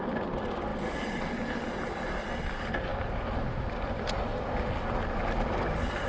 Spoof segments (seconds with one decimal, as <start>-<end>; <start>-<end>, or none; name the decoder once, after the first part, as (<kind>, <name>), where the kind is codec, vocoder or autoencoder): none